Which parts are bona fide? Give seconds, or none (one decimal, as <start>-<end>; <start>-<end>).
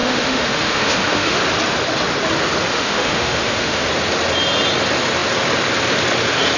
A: 1.4-2.7; 3.9-6.6